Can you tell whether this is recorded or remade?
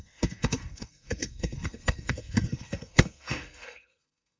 remade